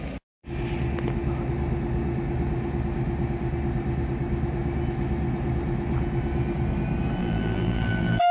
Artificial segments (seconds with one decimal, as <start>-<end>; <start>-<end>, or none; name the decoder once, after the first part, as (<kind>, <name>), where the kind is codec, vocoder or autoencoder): 7.2-8.3 (vocoder, BigVGAN v2)